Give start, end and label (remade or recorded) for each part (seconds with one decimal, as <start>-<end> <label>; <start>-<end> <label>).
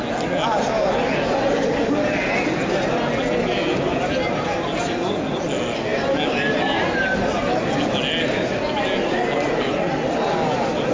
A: 0.0-10.9 recorded